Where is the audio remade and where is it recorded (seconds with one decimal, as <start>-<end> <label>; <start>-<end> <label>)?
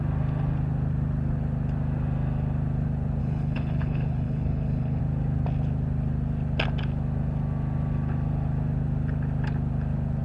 0.0-3.2 recorded; 3.2-5.0 remade; 5.0-10.2 recorded